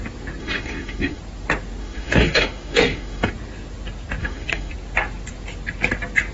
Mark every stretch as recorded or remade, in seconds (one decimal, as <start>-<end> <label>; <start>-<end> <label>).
0.0-0.4 recorded; 0.4-1.2 remade; 1.2-1.8 recorded; 1.8-3.3 remade; 3.3-4.2 recorded; 4.2-4.7 remade; 4.7-6.3 recorded